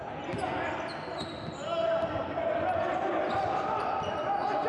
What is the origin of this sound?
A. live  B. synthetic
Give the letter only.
B